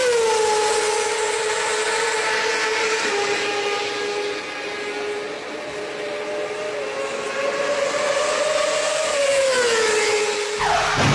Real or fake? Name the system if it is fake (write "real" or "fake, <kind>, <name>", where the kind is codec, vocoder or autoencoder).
real